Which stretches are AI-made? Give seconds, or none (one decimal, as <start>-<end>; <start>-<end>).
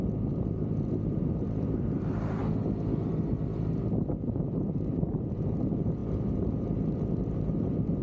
0.0-2.4; 4.1-8.0